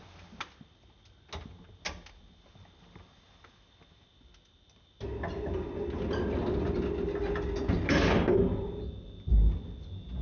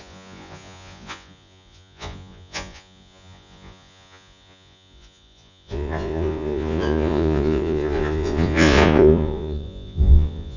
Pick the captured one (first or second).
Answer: first